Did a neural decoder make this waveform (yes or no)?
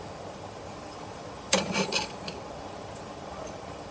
yes